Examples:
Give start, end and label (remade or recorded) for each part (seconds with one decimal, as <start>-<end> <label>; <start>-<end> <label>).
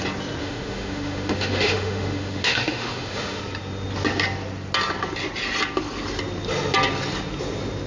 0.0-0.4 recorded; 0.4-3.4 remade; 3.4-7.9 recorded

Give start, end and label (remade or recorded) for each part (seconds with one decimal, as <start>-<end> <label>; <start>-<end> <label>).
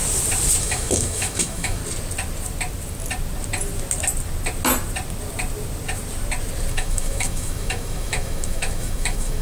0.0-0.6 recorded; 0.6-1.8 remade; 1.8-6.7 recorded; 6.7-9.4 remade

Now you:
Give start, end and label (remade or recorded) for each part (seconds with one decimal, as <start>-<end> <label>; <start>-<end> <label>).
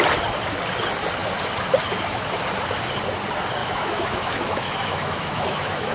0.0-3.6 recorded; 3.6-5.9 remade